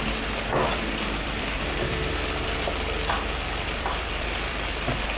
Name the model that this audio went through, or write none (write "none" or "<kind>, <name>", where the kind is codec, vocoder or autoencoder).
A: vocoder, BigVGAN v2